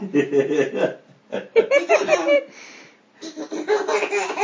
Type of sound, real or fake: real